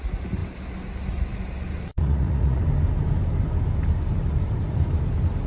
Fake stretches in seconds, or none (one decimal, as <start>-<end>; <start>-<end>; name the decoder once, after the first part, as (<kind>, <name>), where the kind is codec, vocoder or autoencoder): 1.9-2.6 (vocoder, Vocos)